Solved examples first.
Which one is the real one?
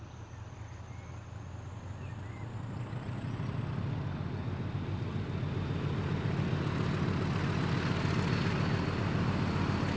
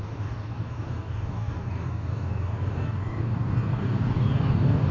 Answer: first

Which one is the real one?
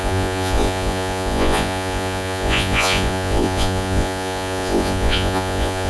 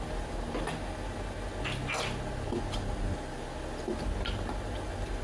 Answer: second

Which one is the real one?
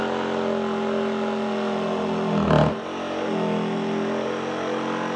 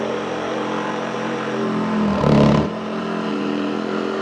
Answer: first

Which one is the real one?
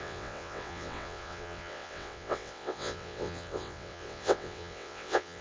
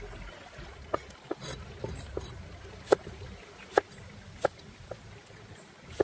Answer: second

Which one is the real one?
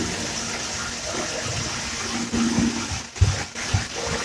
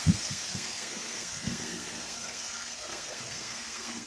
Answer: first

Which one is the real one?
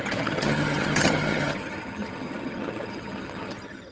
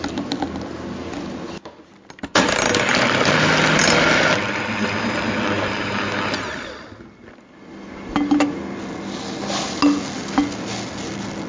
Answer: second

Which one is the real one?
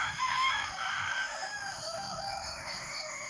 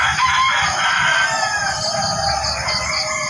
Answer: second